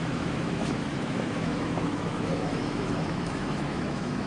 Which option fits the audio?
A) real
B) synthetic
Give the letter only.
B